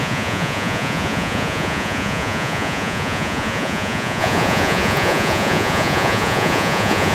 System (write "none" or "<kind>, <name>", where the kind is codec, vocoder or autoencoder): vocoder, Vocos